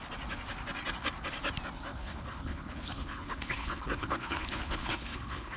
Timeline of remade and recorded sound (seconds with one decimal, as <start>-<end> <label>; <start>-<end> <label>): 0.0-1.9 recorded; 1.9-5.6 remade